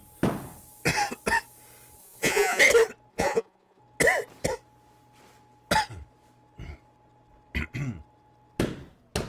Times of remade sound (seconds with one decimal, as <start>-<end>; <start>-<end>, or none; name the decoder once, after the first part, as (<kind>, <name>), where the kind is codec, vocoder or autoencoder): 2.0-2.6 (vocoder, Vocos); 3.1-3.8